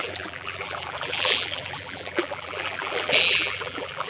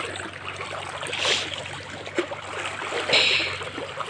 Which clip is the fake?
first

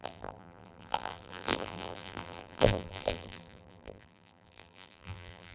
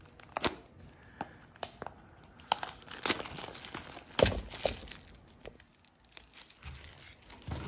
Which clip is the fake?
first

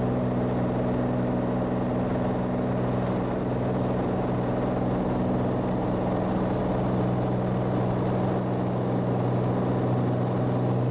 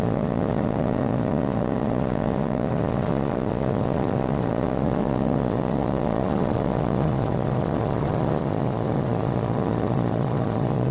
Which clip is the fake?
second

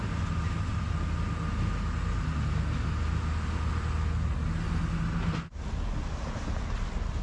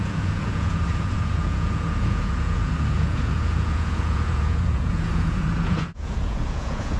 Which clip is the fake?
second